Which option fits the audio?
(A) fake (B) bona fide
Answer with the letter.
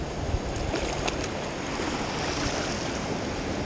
B